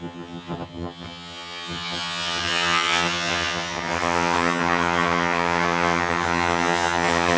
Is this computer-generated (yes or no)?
yes